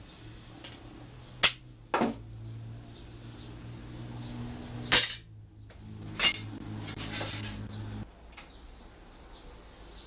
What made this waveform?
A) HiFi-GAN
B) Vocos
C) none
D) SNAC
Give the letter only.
C